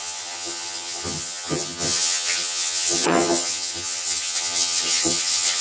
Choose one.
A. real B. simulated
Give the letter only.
B